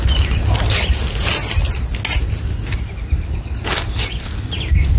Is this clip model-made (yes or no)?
no